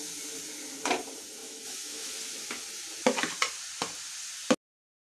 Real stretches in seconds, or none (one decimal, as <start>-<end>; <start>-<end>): 0.0-1.4; 2.1-5.0